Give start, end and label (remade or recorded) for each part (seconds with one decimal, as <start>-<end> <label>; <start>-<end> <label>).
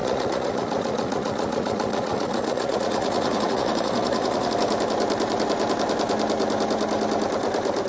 0.0-4.5 remade; 4.5-7.9 recorded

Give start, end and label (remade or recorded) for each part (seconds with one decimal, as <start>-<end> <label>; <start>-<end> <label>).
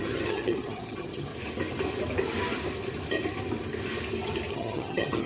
0.0-1.3 remade; 1.3-4.5 recorded; 4.5-5.3 remade